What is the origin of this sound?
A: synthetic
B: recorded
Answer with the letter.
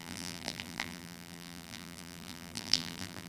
A